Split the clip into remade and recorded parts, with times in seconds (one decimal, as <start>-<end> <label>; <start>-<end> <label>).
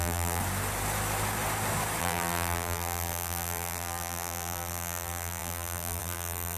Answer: 0.0-0.4 remade; 0.4-2.0 recorded; 2.0-6.6 remade